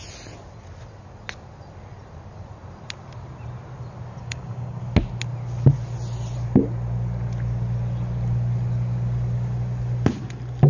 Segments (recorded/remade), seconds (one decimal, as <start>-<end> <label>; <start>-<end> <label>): 0.0-4.2 recorded; 4.2-4.8 remade; 4.8-10.7 recorded